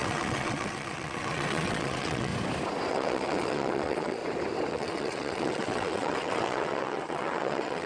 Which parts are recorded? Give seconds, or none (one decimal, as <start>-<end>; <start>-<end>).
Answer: 2.3-2.9; 4.2-4.7